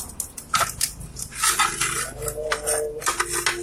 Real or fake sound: real